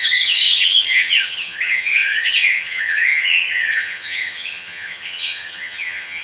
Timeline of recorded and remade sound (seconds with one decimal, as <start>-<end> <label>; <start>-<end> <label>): 0.0-6.2 remade